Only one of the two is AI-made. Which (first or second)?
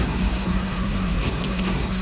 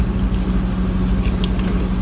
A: first